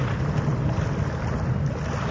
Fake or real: real